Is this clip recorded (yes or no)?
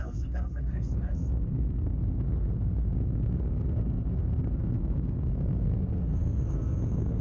no